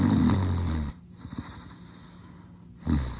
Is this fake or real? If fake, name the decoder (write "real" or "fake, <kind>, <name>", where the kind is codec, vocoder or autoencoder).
real